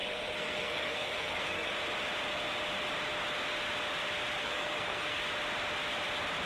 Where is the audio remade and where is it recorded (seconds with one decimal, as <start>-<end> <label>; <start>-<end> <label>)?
0.0-1.7 remade; 1.7-4.4 recorded; 4.4-5.2 remade; 5.2-6.5 recorded